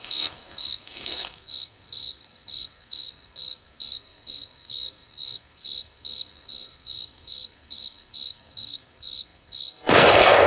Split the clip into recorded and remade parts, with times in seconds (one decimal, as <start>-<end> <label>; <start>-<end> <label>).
0.0-10.5 remade